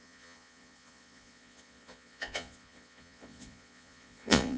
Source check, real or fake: fake